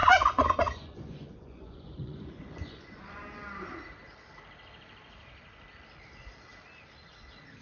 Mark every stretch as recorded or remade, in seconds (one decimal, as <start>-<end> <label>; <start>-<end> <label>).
0.0-3.0 remade; 3.0-7.6 recorded